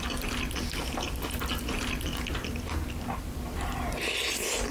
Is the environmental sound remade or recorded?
recorded